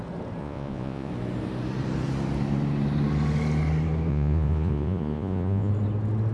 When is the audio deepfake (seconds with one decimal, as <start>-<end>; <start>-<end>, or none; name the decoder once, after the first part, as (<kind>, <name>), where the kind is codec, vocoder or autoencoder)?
0.4-1.1 (vocoder, Vocos); 4.1-5.7